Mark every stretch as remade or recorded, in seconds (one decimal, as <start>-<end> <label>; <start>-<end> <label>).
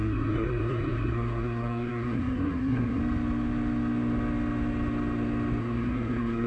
0.0-3.0 remade; 3.0-5.6 recorded; 5.6-6.5 remade